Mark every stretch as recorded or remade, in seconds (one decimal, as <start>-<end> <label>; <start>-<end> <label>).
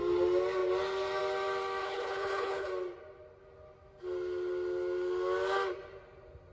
0.0-1.8 recorded; 1.8-2.7 remade; 2.7-6.5 recorded